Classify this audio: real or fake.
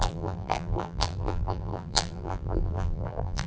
fake